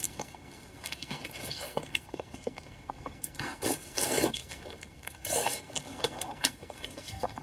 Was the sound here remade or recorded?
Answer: remade